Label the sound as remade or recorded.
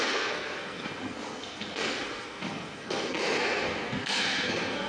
remade